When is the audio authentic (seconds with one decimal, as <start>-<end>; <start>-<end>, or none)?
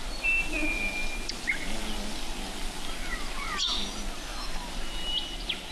0.0-5.7